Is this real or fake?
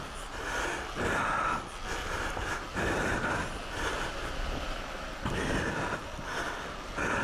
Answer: real